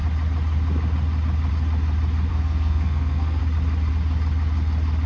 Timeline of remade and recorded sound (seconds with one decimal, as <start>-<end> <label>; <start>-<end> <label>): 0.0-2.3 recorded; 2.3-3.4 remade; 3.4-5.1 recorded